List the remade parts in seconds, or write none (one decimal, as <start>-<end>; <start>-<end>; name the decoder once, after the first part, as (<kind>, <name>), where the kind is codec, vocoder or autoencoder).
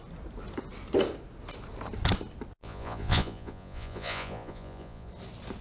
2.6-5.1 (vocoder, Vocos)